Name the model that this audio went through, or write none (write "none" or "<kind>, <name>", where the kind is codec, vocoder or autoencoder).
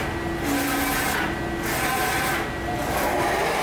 none